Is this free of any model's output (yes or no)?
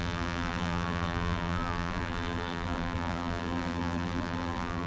no